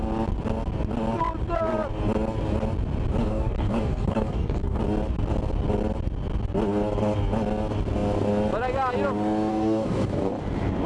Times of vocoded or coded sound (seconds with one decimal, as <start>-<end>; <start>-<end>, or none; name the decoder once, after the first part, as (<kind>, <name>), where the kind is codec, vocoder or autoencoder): 3.2-4.8 (codec, DAC); 9.5-10.3